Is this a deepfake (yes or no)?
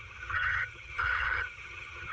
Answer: yes